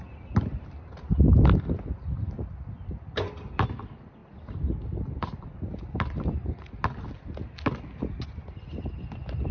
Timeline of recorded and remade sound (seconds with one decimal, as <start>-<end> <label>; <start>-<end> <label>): 0.0-9.5 recorded